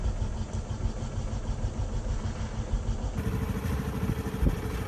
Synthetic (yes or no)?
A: no